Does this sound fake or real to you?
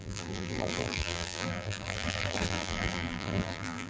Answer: fake